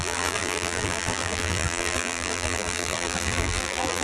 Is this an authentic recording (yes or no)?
no